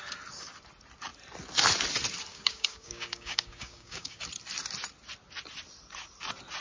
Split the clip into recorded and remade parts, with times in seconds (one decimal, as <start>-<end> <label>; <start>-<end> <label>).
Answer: 0.0-2.3 recorded; 2.3-4.2 remade; 4.2-6.6 recorded